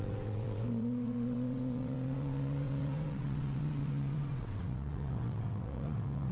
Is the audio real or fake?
fake